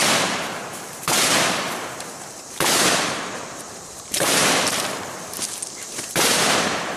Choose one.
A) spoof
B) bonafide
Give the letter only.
A